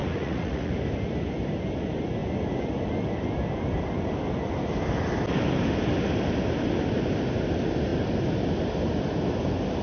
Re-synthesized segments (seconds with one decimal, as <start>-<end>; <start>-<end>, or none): 0.0-0.7